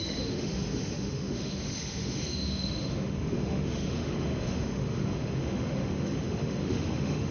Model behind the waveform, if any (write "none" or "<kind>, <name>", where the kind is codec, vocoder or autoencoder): autoencoder, DAC-VAE